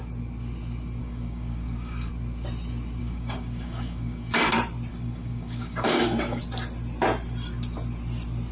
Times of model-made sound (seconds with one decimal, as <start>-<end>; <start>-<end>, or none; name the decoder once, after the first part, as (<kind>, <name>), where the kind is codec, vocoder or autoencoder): 1.0-2.1 (codec, DAC); 3.0-4.5; 4.9-6.4